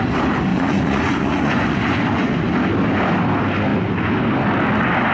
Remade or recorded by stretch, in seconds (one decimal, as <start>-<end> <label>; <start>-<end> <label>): 0.0-0.5 recorded; 0.5-2.5 remade; 2.5-5.1 recorded